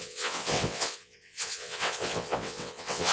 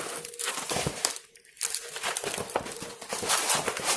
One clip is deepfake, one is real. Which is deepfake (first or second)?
first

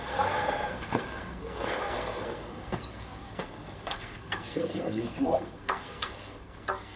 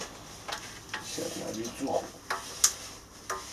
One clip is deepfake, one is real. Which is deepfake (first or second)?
first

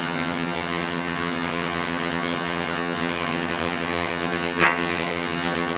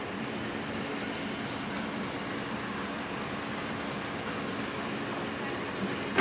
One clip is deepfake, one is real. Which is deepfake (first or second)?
first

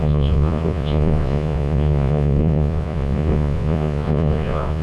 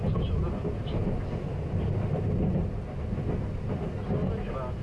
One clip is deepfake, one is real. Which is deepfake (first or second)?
first